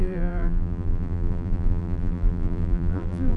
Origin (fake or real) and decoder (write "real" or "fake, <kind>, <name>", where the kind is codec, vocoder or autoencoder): fake, vocoder, BigVGAN v2